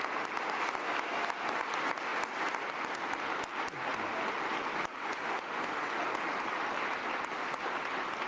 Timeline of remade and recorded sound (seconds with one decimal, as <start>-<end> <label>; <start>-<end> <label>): 0.0-4.9 recorded; 4.9-5.9 remade; 5.9-8.3 recorded